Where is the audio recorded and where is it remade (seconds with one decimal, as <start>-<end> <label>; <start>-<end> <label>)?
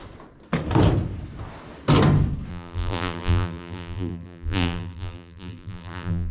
0.0-2.5 recorded; 2.5-6.3 remade